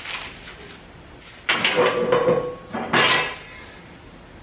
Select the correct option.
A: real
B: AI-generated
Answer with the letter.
A